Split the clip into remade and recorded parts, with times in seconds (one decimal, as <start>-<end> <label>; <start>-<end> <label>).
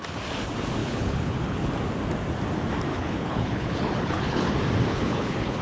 0.0-0.8 recorded; 0.8-1.7 remade; 1.7-2.9 recorded; 2.9-4.5 remade; 4.5-4.9 recorded; 4.9-5.6 remade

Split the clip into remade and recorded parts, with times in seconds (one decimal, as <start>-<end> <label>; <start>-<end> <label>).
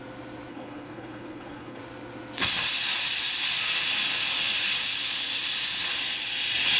0.0-0.5 recorded; 0.5-1.8 remade; 1.8-6.8 recorded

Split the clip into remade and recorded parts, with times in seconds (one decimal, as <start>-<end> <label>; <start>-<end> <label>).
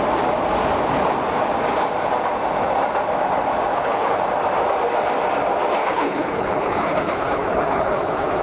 0.0-3.7 recorded; 3.7-4.2 remade; 4.2-5.8 recorded; 5.8-8.4 remade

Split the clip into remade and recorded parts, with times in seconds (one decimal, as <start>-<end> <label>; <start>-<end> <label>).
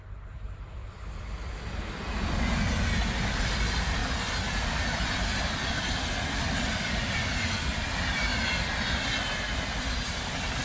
0.0-10.6 recorded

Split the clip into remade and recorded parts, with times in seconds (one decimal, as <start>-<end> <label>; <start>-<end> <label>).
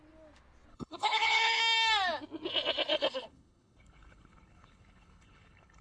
0.0-0.7 recorded; 0.7-1.6 remade; 1.6-2.9 recorded; 2.9-5.8 remade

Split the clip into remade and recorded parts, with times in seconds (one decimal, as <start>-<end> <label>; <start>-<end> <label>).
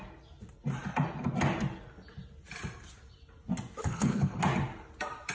0.0-3.8 recorded; 3.8-4.4 remade; 4.4-5.3 recorded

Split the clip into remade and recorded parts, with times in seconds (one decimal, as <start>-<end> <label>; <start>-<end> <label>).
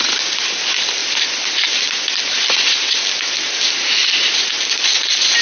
0.0-5.4 recorded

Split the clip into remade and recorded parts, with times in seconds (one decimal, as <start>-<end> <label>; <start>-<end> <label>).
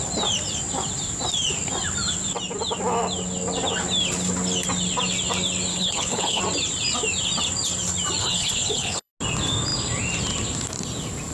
0.0-5.7 recorded; 5.7-6.4 remade; 6.4-8.2 recorded; 8.2-9.1 remade; 9.1-11.3 recorded